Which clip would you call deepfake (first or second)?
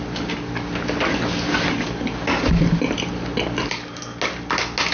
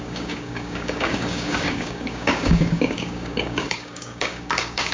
second